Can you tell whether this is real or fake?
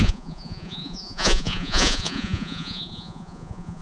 fake